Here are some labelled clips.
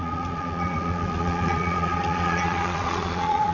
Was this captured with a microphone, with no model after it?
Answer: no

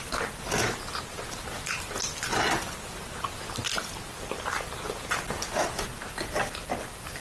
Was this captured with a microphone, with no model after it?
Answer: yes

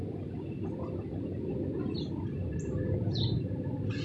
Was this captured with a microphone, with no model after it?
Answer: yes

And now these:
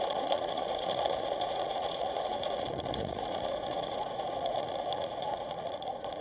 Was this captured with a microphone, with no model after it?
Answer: no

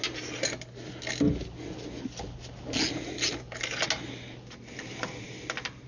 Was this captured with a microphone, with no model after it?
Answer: yes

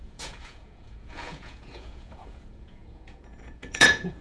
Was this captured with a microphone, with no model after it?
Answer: no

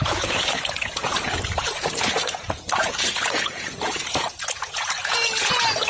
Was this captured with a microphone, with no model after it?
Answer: no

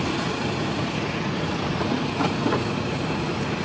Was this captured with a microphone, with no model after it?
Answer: no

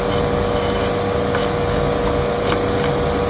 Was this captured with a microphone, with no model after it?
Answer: yes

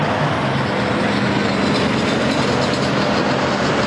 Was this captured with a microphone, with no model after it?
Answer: yes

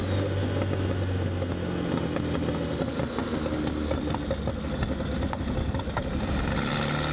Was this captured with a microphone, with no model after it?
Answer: yes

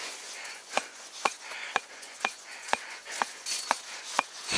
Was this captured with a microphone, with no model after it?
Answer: no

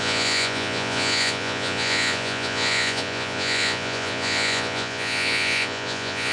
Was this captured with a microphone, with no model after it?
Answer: no